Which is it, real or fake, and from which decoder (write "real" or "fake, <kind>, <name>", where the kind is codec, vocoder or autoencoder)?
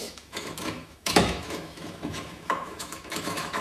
fake, autoencoder, DAC-VAE